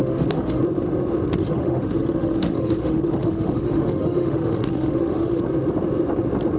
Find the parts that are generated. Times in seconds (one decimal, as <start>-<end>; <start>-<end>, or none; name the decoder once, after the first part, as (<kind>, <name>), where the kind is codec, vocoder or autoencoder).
0.0-0.6 (autoencoder, DAC-VAE); 1.4-5.4